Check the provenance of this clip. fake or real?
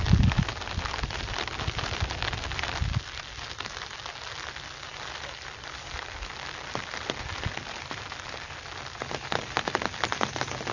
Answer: real